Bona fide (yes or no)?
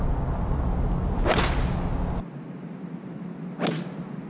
yes